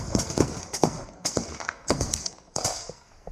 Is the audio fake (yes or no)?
yes